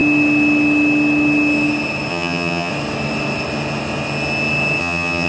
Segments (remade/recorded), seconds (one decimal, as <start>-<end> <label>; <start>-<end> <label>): 0.0-2.1 recorded; 2.1-2.7 remade; 2.7-4.8 recorded; 4.8-5.3 remade